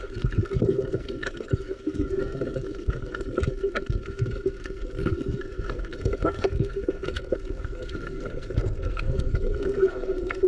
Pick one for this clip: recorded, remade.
remade